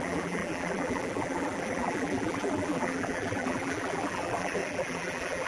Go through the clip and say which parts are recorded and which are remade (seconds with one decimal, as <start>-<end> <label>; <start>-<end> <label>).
0.0-5.5 remade